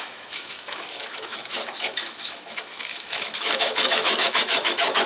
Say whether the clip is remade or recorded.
remade